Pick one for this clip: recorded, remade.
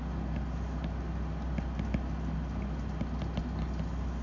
recorded